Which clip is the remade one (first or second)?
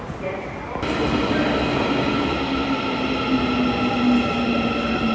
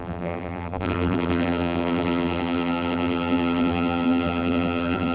second